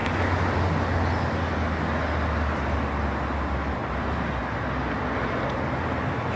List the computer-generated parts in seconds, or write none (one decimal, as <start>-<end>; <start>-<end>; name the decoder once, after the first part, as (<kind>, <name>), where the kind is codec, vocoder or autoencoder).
3.8-4.4 (vocoder, BigVGAN v2)